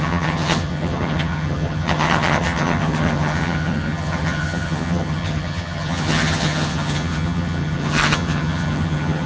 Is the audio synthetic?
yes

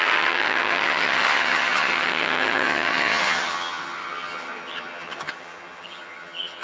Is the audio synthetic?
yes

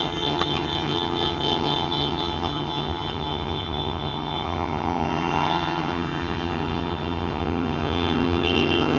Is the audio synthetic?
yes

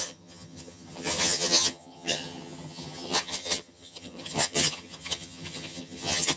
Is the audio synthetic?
yes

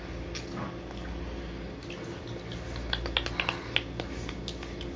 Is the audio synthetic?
no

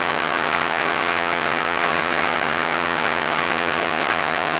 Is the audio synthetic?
yes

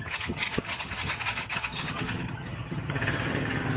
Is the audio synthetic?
yes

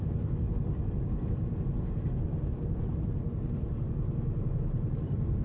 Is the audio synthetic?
no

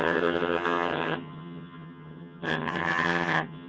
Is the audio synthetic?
yes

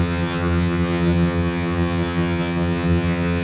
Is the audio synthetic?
yes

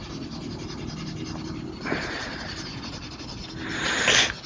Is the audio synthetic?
no